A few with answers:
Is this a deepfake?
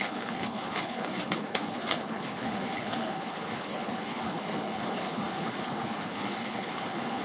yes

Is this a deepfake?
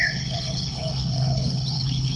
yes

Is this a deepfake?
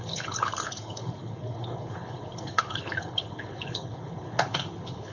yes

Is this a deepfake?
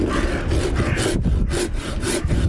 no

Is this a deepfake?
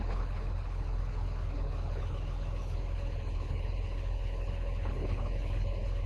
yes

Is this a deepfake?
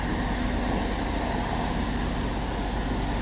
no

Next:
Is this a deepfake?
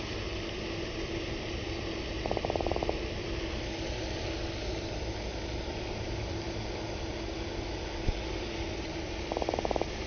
no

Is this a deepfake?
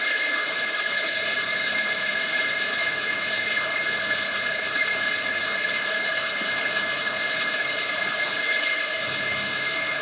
yes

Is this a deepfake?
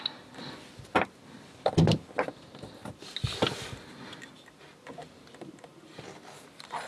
no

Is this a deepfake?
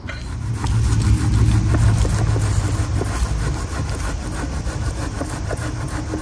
no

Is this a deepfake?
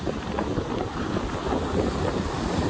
no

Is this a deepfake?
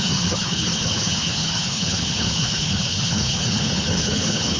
yes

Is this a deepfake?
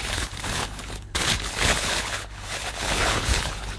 yes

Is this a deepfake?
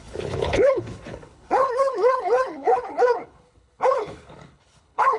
yes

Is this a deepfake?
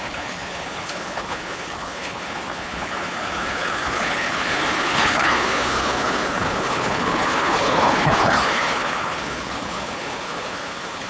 yes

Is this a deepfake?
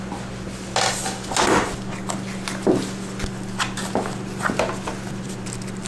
no